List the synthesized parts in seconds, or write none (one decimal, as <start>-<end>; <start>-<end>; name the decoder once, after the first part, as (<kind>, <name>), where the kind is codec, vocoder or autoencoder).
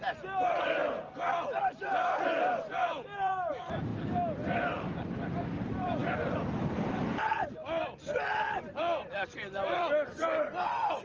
0.0-0.8 (vocoder, BigVGAN v2); 1.6-3.9; 5.0-11.0